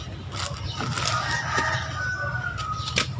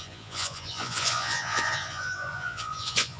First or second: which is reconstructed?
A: second